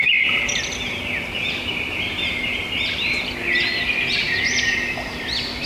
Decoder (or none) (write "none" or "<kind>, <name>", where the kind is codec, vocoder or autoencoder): vocoder, BigVGAN v2